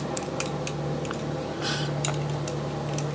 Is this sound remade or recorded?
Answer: recorded